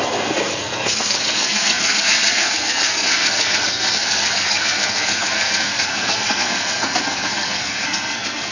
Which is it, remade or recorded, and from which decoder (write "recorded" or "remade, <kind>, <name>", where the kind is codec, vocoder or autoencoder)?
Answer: remade, codec, SNAC